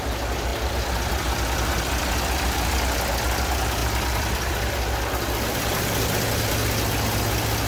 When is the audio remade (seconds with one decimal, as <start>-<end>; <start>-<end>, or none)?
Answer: 0.5-1.1; 3.8-6.3